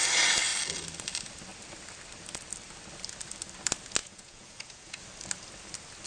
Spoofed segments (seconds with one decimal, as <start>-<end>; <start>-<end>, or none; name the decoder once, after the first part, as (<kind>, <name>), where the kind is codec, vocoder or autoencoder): 4.0-5.0 (vocoder, Vocos)